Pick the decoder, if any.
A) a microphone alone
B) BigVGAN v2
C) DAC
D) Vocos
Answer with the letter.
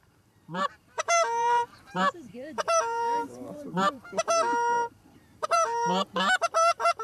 B